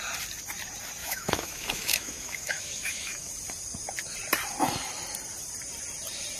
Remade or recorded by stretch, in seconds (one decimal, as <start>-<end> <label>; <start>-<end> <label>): 0.0-1.0 recorded; 1.0-3.3 remade; 3.3-6.4 recorded